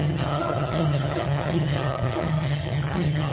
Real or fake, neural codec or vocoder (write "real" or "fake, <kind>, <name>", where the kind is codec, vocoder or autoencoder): fake, vocoder, HiFi-GAN